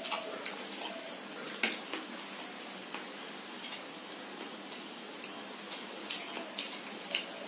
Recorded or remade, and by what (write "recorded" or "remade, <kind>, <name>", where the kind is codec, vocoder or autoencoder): recorded